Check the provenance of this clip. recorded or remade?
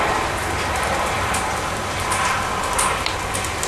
remade